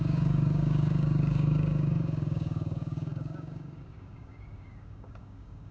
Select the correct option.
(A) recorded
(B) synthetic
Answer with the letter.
B